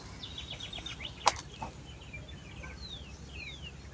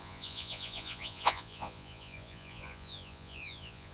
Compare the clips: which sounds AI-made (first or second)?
second